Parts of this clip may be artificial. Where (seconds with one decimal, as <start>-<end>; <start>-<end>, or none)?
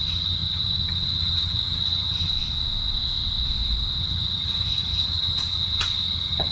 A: 0.0-2.3; 4.0-6.5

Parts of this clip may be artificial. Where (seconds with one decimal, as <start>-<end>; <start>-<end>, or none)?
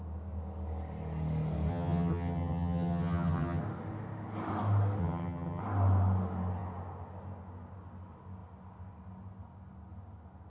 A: 1.7-3.6; 5.0-5.6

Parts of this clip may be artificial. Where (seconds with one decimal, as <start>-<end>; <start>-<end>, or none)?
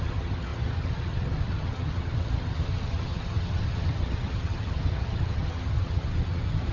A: 0.0-6.7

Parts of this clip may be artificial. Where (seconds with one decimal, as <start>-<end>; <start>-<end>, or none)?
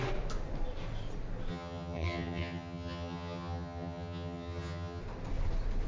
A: 1.5-5.0